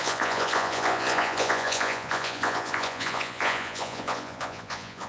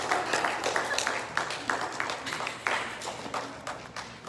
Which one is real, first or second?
second